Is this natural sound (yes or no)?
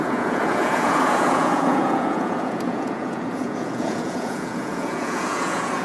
no